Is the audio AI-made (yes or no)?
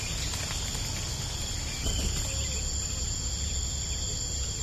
no